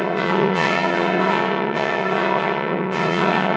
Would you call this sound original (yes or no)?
no